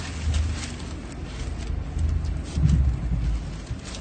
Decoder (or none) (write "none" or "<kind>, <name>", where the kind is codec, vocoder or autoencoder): none